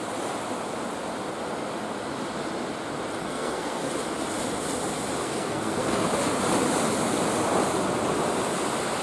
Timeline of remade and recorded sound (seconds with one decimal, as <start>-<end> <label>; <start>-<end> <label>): 0.0-3.2 recorded; 3.2-3.9 remade; 3.9-5.2 recorded; 5.2-6.1 remade; 6.1-9.0 recorded